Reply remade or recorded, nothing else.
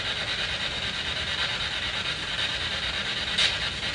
recorded